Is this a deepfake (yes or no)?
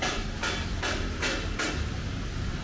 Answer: no